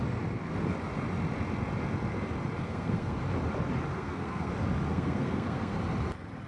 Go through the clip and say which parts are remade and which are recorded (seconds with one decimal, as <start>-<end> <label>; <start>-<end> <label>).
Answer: 0.0-2.6 recorded; 2.6-3.2 remade; 3.2-3.9 recorded; 3.9-4.5 remade; 4.5-4.9 recorded; 4.9-5.8 remade; 5.8-6.5 recorded